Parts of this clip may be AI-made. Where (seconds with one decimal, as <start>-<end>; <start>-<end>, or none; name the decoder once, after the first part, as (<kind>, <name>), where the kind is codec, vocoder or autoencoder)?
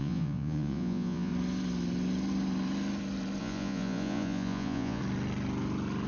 0.0-1.3 (vocoder, Vocos); 3.4-5.0